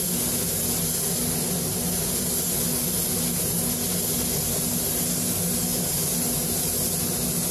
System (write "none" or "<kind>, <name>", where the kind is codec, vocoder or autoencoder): none